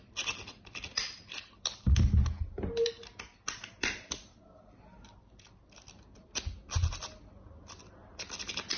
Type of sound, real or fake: real